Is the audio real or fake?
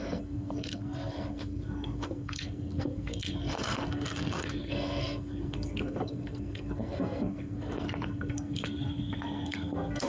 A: fake